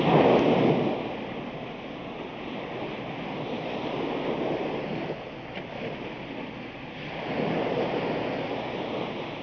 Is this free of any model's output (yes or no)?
yes